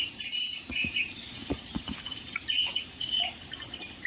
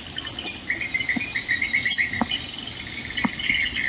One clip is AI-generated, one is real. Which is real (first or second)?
second